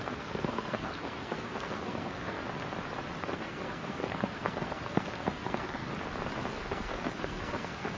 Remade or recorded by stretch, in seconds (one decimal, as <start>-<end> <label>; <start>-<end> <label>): 0.0-2.4 remade; 2.4-3.2 recorded; 3.2-5.9 remade; 5.9-6.5 recorded; 6.5-8.0 remade